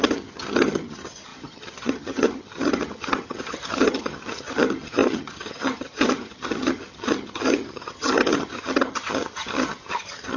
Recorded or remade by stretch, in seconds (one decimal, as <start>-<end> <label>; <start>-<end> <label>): 0.0-10.4 remade